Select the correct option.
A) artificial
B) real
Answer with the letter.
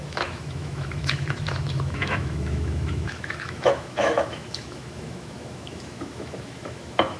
A